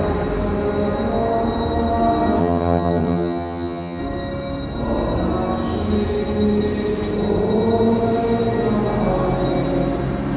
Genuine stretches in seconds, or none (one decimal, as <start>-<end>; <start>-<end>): 0.0-2.4; 4.0-10.4